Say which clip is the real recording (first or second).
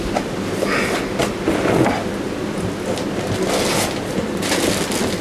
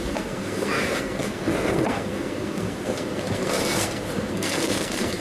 first